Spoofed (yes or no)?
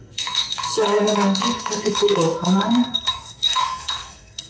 yes